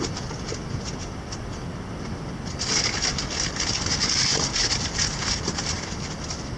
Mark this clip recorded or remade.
recorded